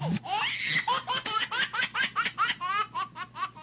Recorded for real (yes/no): yes